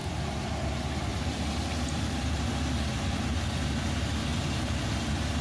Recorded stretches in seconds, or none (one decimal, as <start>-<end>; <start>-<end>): 0.0-1.1; 2.4-4.3; 4.9-5.4